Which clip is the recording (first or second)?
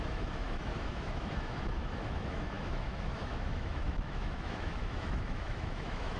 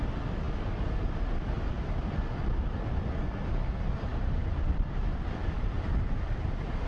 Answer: second